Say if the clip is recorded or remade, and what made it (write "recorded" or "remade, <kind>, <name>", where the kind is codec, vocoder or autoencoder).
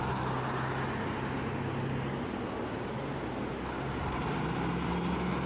recorded